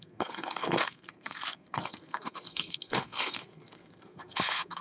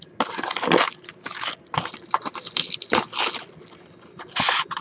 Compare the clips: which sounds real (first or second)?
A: second